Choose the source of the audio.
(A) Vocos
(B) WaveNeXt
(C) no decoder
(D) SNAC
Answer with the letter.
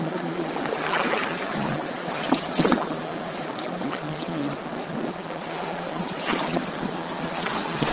A